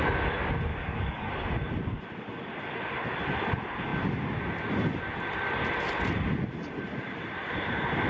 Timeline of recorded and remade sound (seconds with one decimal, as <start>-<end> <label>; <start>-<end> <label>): 0.0-0.7 recorded; 0.7-1.3 remade; 1.3-8.1 recorded

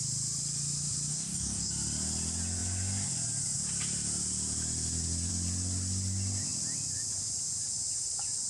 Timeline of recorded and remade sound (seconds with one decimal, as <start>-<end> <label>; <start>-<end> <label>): 0.0-1.1 recorded; 1.1-1.7 remade; 1.7-8.5 recorded

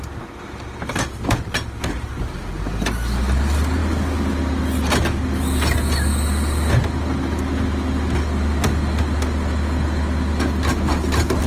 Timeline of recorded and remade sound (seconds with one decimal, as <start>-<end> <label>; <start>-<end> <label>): 0.0-11.5 recorded

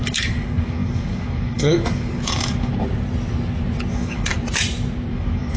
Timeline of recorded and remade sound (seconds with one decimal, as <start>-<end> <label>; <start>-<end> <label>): 0.0-2.7 remade; 2.7-3.9 recorded; 3.9-4.3 remade; 4.3-5.1 recorded; 5.1-5.6 remade

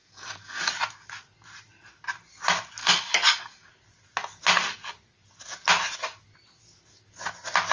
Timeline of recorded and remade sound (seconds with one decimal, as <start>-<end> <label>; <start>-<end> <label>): 0.0-0.7 remade; 0.7-2.8 recorded; 2.8-3.7 remade; 3.7-7.7 recorded

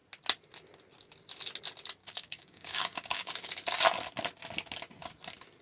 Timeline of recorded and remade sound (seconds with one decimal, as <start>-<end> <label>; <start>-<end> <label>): 0.0-2.0 recorded; 2.0-3.5 remade; 3.5-5.6 recorded

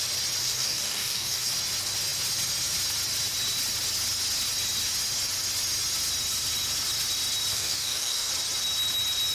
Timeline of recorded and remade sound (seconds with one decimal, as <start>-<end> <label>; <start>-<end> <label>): 0.0-0.4 recorded; 0.4-1.5 remade; 1.5-7.5 recorded; 7.5-8.3 remade; 8.3-9.3 recorded

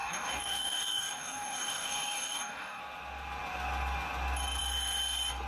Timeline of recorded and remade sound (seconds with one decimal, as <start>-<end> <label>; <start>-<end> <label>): 0.0-2.8 remade; 2.8-5.5 recorded